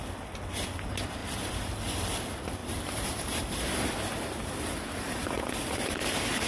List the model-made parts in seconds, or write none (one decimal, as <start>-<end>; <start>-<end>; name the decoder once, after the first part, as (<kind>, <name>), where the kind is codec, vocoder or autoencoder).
1.2-2.1 (vocoder, BigVGAN v2); 2.6-5.4